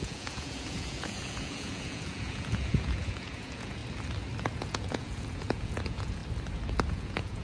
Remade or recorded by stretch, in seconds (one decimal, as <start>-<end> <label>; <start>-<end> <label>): 0.0-3.8 remade; 3.8-4.4 recorded; 4.4-6.2 remade; 6.2-6.9 recorded; 6.9-7.4 remade